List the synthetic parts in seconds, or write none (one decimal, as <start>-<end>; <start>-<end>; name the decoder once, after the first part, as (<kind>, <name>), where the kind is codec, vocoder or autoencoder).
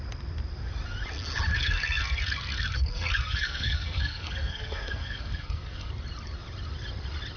1.5-5.9 (codec, SNAC)